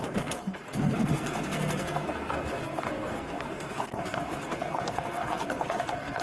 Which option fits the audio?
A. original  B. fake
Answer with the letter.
B